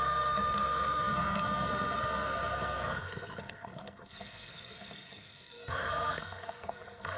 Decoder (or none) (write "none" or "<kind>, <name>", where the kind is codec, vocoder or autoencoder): codec, SNAC